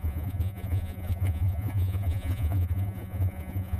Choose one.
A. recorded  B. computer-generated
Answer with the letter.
B